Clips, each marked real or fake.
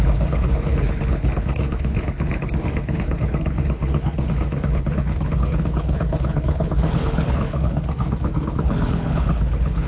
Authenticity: fake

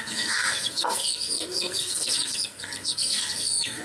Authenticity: fake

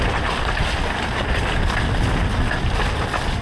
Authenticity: real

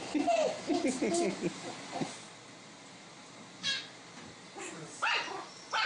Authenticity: real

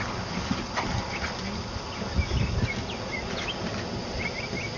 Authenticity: real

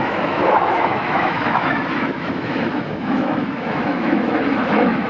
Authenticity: fake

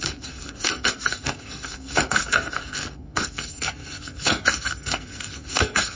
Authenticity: fake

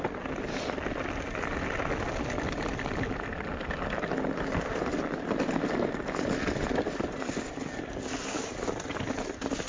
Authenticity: real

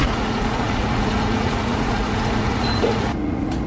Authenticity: fake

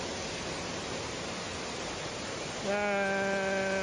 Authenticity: real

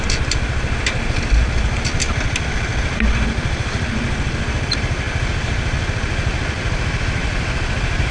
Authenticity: real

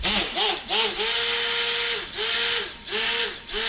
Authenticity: real